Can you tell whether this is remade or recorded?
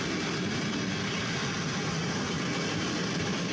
recorded